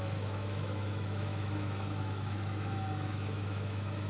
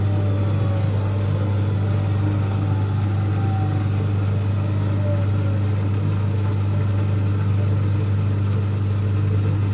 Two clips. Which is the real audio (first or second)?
second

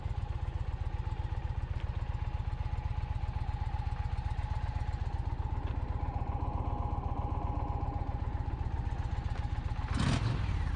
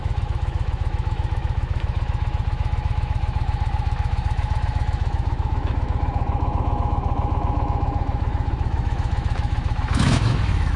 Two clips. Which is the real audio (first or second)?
first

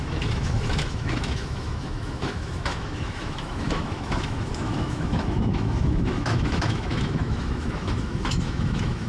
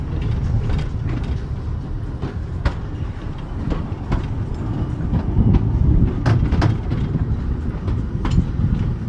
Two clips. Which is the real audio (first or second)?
second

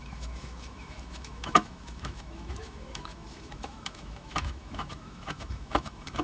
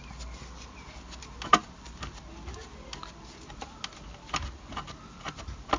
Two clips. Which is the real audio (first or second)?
second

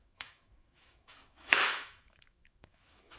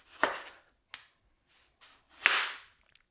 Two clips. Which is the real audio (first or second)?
second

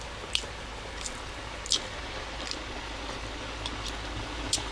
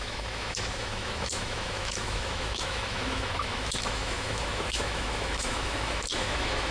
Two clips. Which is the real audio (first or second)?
first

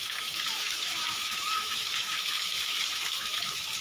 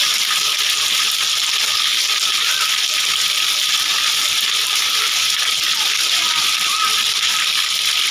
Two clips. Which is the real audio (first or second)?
second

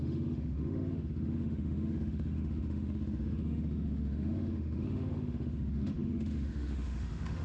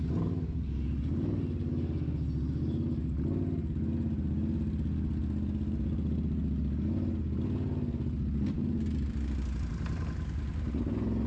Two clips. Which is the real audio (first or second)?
second